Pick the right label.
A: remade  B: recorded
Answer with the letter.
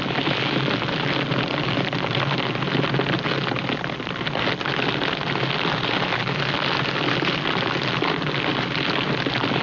B